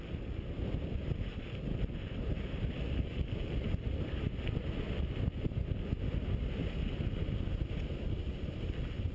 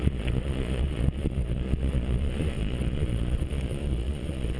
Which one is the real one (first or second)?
first